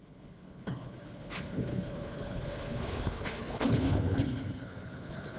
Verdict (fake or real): fake